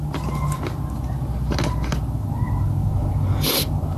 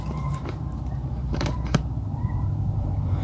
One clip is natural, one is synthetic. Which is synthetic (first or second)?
second